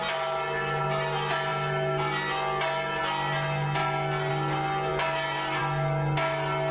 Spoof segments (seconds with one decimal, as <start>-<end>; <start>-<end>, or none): none